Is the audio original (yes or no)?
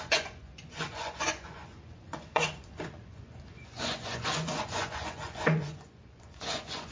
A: no